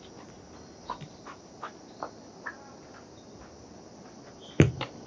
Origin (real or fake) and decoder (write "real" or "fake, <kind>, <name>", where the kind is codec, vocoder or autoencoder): real